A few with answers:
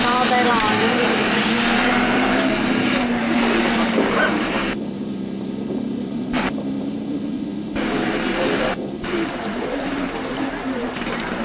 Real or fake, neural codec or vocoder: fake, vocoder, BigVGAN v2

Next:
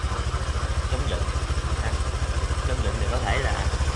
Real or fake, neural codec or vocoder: real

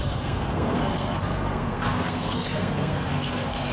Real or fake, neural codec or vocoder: fake, codec, SNAC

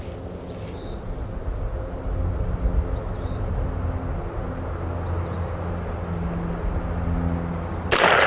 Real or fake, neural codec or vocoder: real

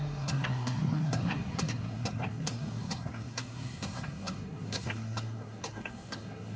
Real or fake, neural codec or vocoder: fake, codec, SNAC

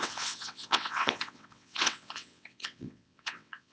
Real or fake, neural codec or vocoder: fake, vocoder, WaveNeXt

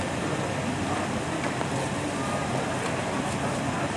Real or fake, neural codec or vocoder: real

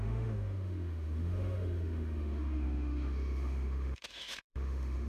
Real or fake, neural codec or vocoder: fake, autoencoder, DAC-VAE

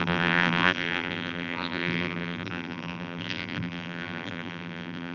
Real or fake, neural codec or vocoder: fake, vocoder, BigVGAN v2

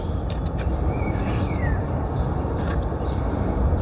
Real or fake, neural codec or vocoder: real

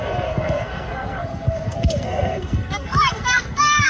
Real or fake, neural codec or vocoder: fake, codec, SNAC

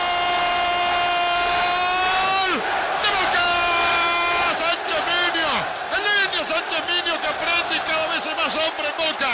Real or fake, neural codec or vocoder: real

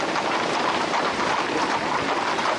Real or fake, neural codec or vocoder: real